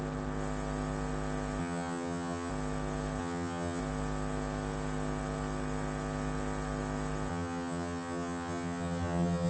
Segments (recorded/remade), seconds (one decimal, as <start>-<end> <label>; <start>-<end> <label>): 0.0-1.6 recorded; 1.6-2.5 remade; 2.5-3.2 recorded; 3.2-3.8 remade; 3.8-7.3 recorded; 7.3-9.5 remade